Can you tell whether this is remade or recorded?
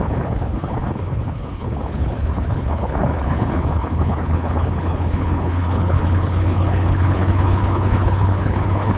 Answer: remade